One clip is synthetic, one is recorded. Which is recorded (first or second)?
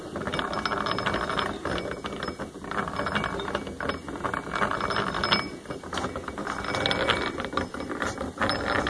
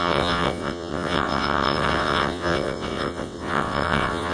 first